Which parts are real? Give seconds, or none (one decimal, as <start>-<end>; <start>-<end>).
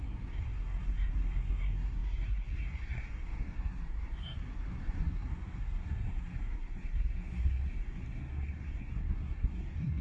none